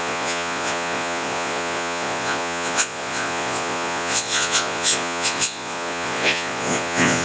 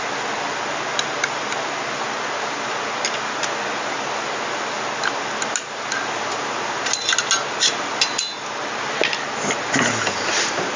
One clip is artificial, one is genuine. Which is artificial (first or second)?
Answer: first